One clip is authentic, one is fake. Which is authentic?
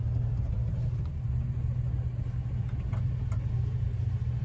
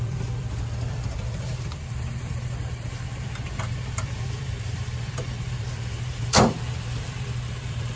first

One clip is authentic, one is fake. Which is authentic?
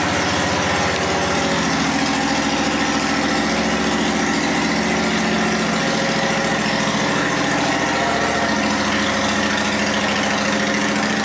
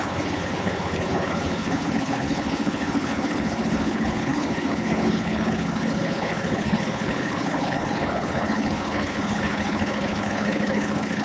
first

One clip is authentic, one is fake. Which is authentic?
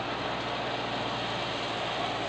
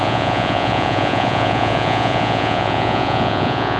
first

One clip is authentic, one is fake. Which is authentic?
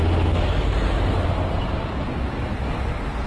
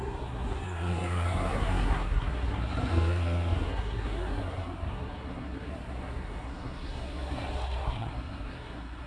first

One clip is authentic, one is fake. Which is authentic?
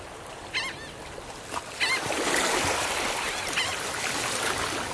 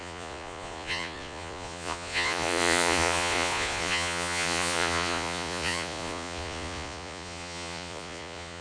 first